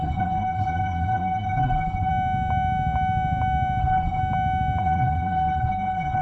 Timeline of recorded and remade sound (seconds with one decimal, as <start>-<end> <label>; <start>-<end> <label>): 0.0-2.1 remade; 2.1-3.8 recorded; 3.8-4.2 remade; 4.2-4.8 recorded; 4.8-6.2 remade